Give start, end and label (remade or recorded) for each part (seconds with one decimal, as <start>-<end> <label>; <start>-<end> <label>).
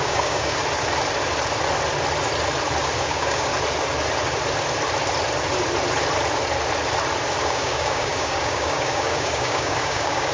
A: 0.0-0.6 remade; 0.6-3.0 recorded; 3.0-3.5 remade; 3.5-7.4 recorded; 7.4-10.3 remade